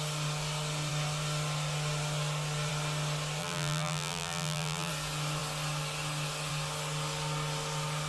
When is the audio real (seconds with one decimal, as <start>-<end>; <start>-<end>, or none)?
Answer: 0.0-3.4; 4.9-8.1